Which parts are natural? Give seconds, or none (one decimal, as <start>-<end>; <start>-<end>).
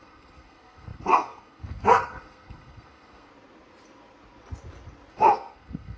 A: 3.3-5.1